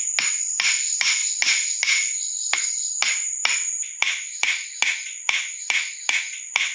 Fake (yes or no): no